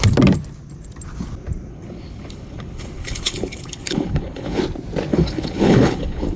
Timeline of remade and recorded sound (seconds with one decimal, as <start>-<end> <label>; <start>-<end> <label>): 0.0-1.7 recorded; 1.7-4.6 remade; 4.6-5.1 recorded; 5.1-6.4 remade